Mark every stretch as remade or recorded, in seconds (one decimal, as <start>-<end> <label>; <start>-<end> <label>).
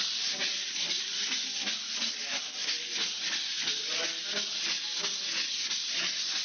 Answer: 0.0-6.4 recorded